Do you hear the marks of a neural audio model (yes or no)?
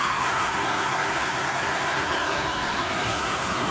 yes